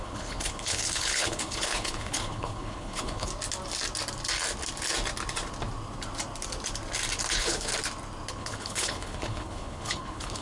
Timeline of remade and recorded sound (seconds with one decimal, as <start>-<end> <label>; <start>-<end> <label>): 0.0-3.3 remade; 3.3-7.3 recorded; 7.3-7.7 remade; 7.7-8.3 recorded; 8.3-10.4 remade